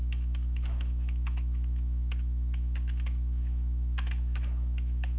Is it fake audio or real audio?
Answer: fake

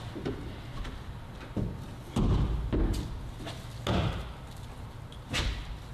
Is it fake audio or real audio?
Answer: real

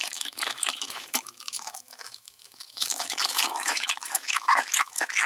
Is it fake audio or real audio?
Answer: fake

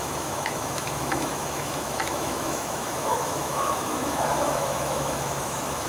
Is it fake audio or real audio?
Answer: fake